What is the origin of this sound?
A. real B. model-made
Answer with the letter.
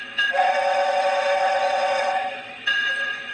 B